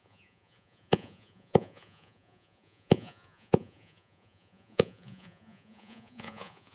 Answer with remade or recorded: remade